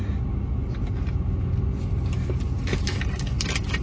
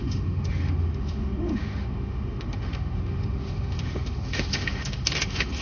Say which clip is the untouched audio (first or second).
first